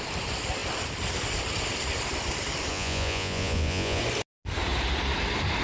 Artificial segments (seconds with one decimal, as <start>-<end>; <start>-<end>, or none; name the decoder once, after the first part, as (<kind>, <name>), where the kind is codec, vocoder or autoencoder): 2.7-4.0 (vocoder, Vocos)